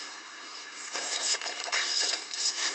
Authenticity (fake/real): fake